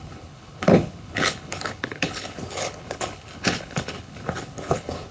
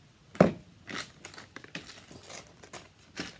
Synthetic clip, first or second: first